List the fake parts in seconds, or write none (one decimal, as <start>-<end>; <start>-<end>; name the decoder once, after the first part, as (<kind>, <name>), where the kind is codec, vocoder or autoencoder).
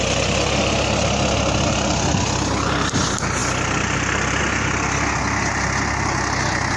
none